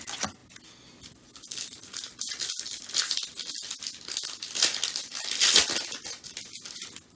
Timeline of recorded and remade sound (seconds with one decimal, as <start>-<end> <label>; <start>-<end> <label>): 0.0-7.2 recorded